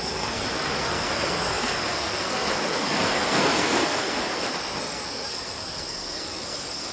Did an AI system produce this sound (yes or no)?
yes